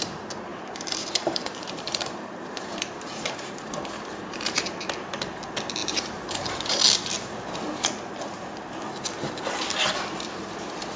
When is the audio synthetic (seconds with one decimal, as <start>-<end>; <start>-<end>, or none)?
0.5-4.7; 5.8-6.8